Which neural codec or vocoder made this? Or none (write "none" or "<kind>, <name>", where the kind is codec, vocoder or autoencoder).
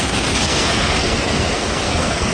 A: codec, SNAC